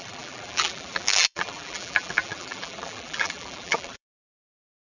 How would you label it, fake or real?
fake